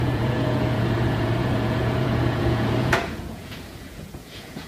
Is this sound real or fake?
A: fake